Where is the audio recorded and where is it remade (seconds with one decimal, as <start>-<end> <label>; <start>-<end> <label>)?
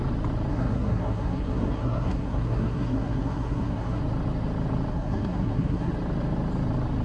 0.0-0.5 recorded; 0.5-4.0 remade; 4.0-4.9 recorded; 4.9-5.9 remade; 5.9-7.0 recorded